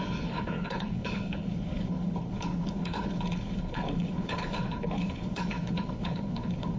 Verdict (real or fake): fake